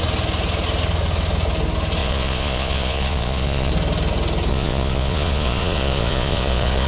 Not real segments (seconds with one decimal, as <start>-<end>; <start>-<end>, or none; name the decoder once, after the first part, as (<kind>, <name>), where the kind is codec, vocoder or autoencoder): 2.0-3.7 (vocoder, Vocos); 4.5-6.9

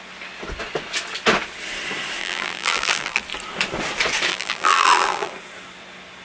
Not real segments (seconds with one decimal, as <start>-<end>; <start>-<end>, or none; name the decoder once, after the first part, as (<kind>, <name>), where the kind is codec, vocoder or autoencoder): 2.2-3.2 (vocoder, BigVGAN v2); 4.3-5.3

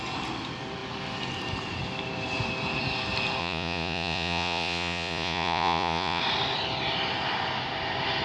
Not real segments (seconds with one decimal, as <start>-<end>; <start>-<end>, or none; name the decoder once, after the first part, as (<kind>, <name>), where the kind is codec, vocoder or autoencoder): 3.4-6.2 (vocoder, Vocos)

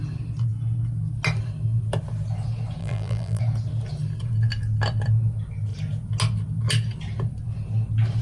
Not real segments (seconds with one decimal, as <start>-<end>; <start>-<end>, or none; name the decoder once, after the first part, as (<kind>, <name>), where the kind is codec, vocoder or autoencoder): 2.8-3.4 (vocoder, BigVGAN v2)

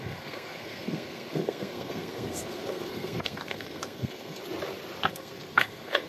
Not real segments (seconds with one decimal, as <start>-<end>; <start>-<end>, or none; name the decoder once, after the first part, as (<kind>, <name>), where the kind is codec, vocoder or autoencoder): 0.0-4.4 (codec, SNAC); 5.1-6.1

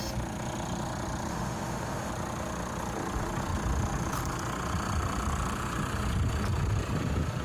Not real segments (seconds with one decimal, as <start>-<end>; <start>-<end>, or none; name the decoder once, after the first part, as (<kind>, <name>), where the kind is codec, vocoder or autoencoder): 1.3-2.1 (autoencoder, DAC-VAE)

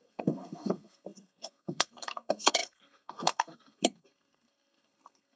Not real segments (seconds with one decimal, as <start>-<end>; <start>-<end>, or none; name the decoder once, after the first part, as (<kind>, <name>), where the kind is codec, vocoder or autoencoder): 0.0-5.4 (codec, SNAC)

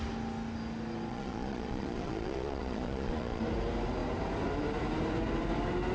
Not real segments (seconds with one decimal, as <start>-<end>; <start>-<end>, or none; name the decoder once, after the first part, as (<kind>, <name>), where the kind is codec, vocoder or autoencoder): 1.1-3.4 (vocoder, Vocos)